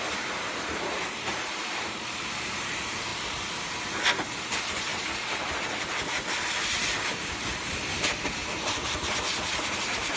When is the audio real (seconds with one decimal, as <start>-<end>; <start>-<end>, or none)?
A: 4.9-5.6; 8.4-9.7